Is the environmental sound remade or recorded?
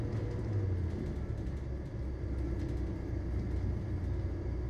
recorded